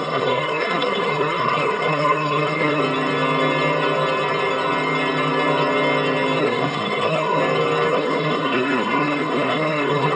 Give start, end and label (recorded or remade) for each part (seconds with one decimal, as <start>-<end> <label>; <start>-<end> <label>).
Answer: 0.0-2.8 remade; 2.8-6.4 recorded; 6.4-7.4 remade; 7.4-7.9 recorded; 7.9-10.2 remade

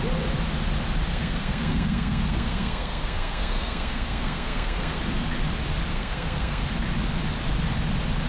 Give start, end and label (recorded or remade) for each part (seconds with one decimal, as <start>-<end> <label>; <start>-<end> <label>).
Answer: 0.0-1.1 recorded; 1.1-5.0 remade; 5.0-5.9 recorded; 5.9-6.6 remade; 6.6-8.3 recorded

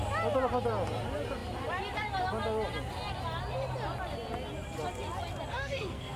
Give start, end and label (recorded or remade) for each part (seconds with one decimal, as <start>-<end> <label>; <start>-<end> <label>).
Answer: 0.0-5.5 recorded; 5.5-6.2 remade

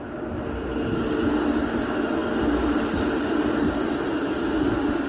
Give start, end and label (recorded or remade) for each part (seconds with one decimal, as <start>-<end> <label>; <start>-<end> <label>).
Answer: 0.0-5.1 recorded

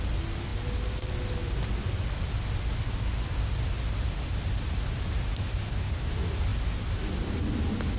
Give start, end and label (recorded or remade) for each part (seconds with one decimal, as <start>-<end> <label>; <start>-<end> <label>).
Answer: 0.0-8.0 recorded

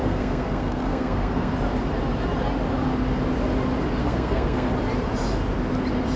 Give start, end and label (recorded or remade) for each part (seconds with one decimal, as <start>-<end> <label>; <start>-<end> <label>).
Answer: 0.0-1.5 remade; 1.5-4.0 recorded; 4.0-4.7 remade; 4.7-6.2 recorded